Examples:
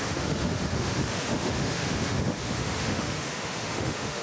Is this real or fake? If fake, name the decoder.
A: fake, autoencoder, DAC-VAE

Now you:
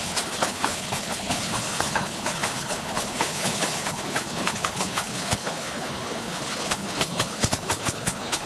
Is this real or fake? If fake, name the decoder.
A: fake, codec, HILCodec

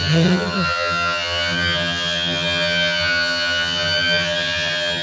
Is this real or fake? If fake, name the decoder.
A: fake, vocoder, HiFi-GAN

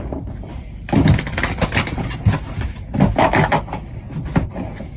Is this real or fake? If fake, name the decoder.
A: real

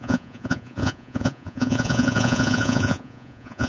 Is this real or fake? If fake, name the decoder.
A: fake, vocoder, Vocos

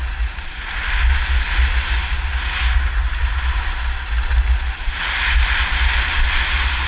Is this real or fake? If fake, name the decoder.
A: real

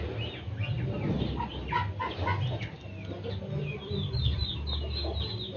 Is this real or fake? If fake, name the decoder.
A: real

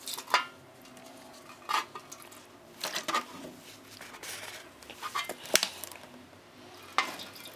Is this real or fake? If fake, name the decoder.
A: real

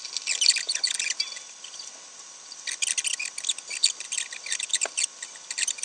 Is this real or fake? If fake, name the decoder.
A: real